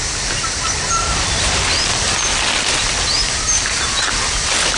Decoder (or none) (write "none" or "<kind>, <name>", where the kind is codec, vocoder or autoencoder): none